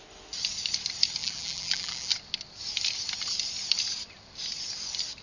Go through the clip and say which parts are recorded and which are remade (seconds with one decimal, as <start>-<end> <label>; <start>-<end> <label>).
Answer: 0.0-1.2 recorded; 1.2-2.1 remade; 2.1-5.2 recorded